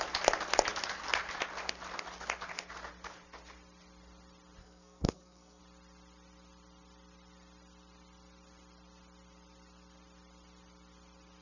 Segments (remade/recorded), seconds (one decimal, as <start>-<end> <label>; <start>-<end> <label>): 0.0-4.6 recorded; 4.6-5.6 remade; 5.6-11.4 recorded